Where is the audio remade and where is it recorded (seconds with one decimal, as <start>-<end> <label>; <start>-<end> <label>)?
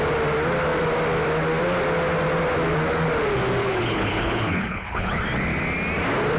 0.0-3.6 recorded; 3.6-5.2 remade; 5.2-6.4 recorded